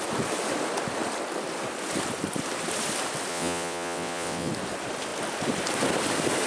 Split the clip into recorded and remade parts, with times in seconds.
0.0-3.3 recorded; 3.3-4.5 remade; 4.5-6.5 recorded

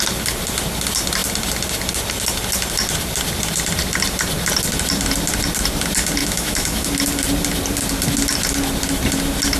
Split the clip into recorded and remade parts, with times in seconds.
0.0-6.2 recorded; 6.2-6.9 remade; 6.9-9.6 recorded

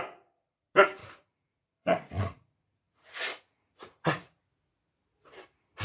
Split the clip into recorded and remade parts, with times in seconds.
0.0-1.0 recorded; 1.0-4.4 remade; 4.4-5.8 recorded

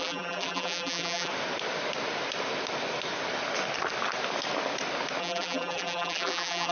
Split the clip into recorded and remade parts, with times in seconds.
0.0-1.3 remade; 1.3-5.2 recorded; 5.2-6.7 remade